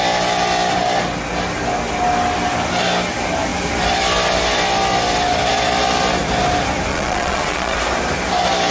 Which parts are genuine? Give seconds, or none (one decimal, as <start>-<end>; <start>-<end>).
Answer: 0.0-6.9; 7.8-8.7